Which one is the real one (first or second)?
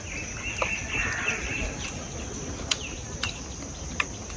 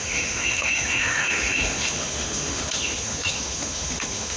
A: first